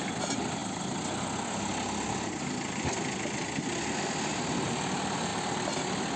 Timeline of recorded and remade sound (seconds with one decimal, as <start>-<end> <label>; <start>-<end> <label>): 0.0-6.2 recorded